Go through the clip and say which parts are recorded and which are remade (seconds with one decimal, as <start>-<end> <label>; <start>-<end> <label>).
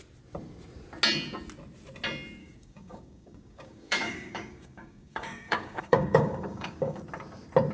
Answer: 0.0-2.4 recorded; 2.4-7.0 remade; 7.0-7.7 recorded